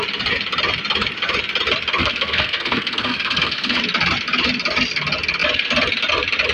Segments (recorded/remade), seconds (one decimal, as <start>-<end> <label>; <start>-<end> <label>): 0.0-2.0 recorded; 2.0-3.8 remade; 3.8-6.5 recorded